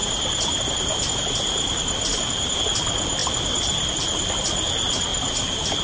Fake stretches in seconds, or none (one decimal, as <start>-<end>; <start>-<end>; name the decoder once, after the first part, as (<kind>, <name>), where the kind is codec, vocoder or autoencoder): 0.0-2.6 (vocoder, BigVGAN v2); 3.2-4.4; 5.1-5.8